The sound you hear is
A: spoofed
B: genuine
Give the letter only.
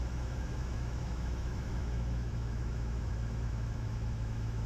A